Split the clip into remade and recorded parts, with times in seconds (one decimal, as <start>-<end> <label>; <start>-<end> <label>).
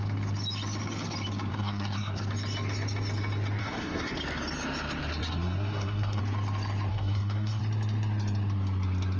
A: 0.0-1.5 recorded; 1.5-2.2 remade; 2.2-3.6 recorded; 3.6-4.1 remade; 4.1-5.2 recorded; 5.2-6.2 remade; 6.2-6.9 recorded; 6.9-7.6 remade; 7.6-9.2 recorded